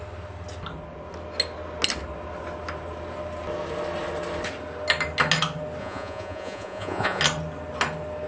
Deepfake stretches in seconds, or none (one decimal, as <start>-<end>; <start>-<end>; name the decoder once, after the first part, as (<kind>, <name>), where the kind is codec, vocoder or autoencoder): 5.8-7.2 (vocoder, Vocos)